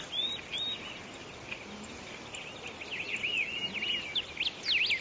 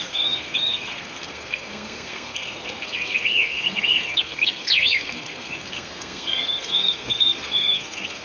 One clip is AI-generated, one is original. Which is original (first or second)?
first